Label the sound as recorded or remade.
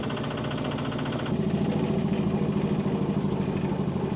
recorded